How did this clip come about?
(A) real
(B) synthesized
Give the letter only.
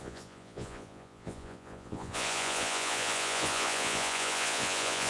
B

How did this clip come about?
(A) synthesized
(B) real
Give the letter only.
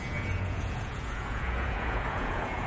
A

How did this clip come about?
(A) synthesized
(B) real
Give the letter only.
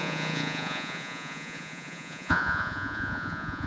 A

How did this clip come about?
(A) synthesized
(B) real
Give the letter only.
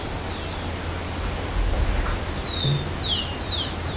B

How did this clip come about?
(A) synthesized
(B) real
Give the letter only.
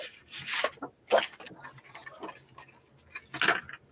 B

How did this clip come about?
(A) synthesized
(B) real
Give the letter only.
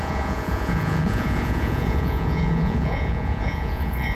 A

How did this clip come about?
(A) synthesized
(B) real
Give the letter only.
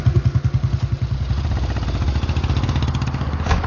B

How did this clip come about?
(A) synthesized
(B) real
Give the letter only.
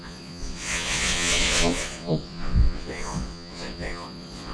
A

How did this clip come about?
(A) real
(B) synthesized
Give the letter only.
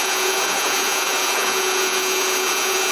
B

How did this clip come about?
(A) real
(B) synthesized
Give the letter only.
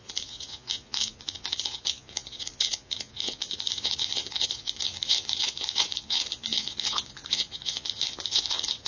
B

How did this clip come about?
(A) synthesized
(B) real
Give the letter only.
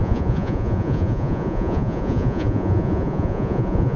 A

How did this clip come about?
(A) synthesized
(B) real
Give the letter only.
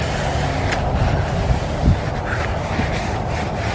B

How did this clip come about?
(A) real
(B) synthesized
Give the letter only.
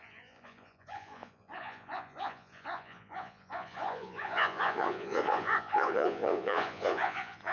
B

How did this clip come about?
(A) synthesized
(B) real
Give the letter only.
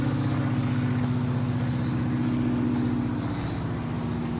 B